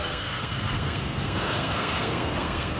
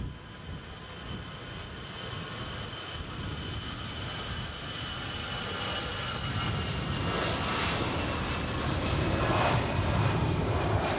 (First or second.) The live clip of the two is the second